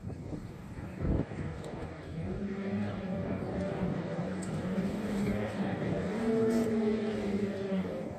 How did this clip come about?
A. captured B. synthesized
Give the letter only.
B